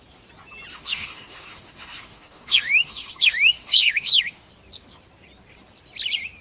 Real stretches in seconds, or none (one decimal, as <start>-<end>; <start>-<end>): 0.0-0.7; 4.5-6.4